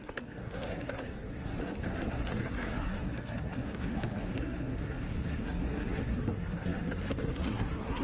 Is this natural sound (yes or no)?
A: no